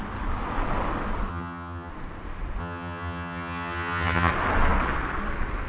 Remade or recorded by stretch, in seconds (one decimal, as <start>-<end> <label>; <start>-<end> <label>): 0.0-1.3 recorded; 1.3-1.9 remade; 1.9-2.6 recorded; 2.6-4.3 remade; 4.3-5.7 recorded